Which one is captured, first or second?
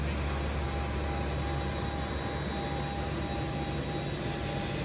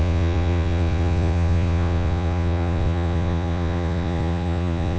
first